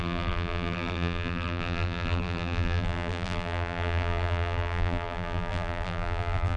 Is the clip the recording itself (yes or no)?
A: no